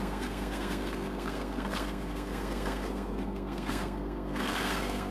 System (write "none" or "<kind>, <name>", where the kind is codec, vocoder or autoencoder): codec, SNAC